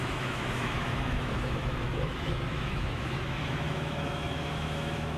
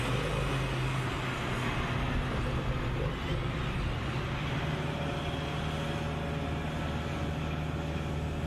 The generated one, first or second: first